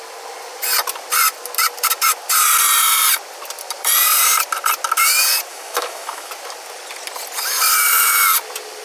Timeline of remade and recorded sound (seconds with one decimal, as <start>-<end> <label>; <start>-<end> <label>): 0.0-5.5 recorded; 5.5-6.3 remade; 6.3-8.8 recorded